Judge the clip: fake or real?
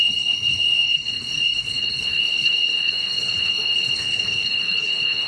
fake